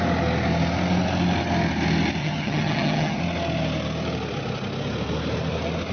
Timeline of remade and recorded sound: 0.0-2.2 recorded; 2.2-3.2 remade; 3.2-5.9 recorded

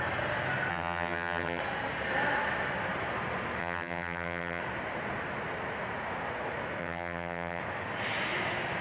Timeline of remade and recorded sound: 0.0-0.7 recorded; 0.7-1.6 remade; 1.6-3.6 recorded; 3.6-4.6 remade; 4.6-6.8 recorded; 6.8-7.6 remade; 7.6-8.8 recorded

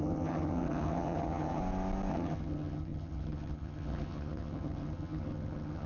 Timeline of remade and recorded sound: 0.0-1.6 remade; 1.6-2.1 recorded; 2.1-5.9 remade

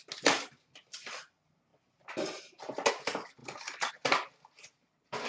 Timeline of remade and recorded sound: 0.0-5.3 recorded

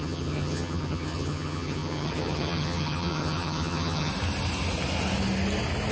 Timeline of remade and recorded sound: 0.0-4.1 remade; 4.1-5.9 recorded

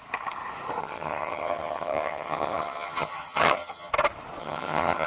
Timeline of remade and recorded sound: 0.0-0.8 recorded; 0.8-3.9 remade; 3.9-4.4 recorded; 4.4-5.1 remade

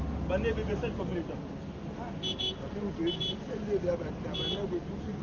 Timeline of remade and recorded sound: 0.0-5.2 recorded

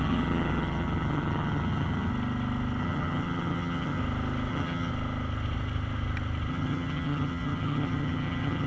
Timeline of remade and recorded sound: 0.0-2.1 remade; 2.1-2.8 recorded; 2.8-4.0 remade; 4.0-4.5 recorded; 4.5-4.9 remade; 4.9-6.5 recorded; 6.5-8.7 remade